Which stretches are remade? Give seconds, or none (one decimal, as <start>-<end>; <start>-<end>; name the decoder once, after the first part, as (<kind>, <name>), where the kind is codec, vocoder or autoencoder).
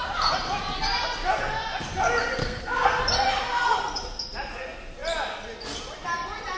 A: 2.4-3.0 (codec, SNAC)